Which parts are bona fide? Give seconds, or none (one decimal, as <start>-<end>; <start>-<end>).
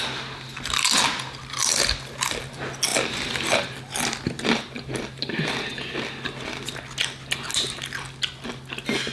0.0-9.1